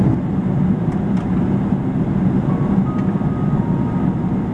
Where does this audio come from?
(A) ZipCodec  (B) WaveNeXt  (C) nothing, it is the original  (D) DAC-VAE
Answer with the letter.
C